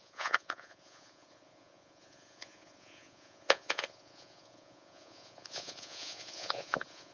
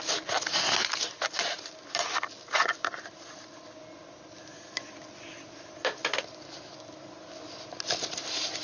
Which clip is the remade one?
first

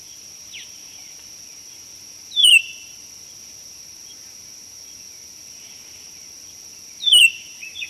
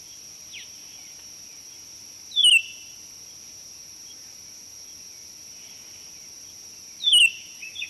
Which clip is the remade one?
first